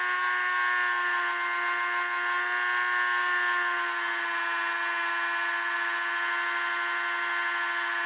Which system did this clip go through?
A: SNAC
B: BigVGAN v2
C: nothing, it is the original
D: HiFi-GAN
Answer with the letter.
C